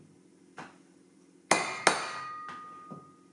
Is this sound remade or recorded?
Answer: recorded